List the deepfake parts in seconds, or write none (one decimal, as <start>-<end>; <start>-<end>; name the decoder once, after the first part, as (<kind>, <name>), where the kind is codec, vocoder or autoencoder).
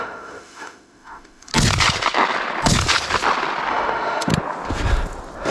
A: 0.0-1.5 (autoencoder, DAC-VAE); 3.7-4.3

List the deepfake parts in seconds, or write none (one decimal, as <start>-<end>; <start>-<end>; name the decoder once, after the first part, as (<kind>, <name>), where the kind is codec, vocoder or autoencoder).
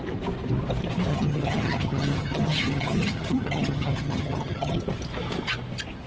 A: 1.1-4.8 (vocoder, HiFi-GAN)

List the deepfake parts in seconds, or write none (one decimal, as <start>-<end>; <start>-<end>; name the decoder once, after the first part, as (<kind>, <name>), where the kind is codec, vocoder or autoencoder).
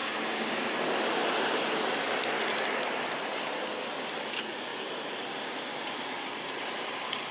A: 0.0-0.5 (codec, DAC)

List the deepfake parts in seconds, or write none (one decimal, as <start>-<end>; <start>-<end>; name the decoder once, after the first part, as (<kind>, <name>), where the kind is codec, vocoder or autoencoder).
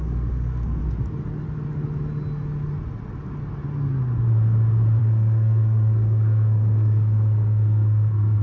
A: 0.0-0.8 (codec, SNAC); 5.0-8.4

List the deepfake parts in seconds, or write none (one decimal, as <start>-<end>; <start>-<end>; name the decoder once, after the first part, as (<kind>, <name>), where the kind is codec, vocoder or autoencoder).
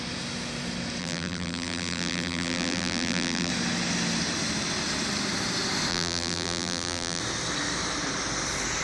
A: 1.0-3.5 (vocoder, BigVGAN v2); 5.9-7.2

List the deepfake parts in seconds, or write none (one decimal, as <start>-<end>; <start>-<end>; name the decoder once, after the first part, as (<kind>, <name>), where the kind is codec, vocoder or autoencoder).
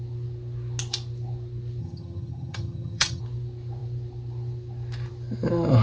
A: 1.8-3.2 (vocoder, HiFi-GAN)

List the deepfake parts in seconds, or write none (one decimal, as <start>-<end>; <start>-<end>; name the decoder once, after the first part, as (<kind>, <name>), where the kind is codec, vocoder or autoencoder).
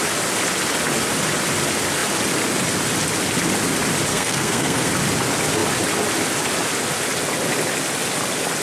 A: 4.1-4.9 (codec, SNAC)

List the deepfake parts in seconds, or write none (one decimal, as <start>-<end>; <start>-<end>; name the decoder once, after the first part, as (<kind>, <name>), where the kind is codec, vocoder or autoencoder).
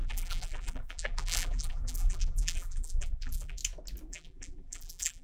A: 0.0-3.6 (vocoder, BigVGAN v2); 4.1-5.2